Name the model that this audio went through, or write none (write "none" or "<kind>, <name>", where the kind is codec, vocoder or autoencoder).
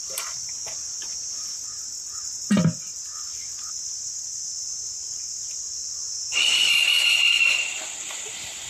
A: none